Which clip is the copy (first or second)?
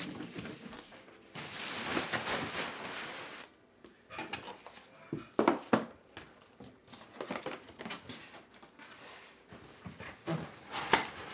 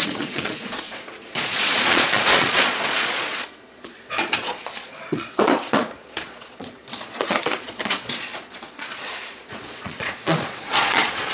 second